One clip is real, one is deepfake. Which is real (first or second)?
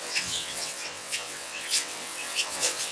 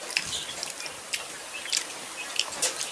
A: second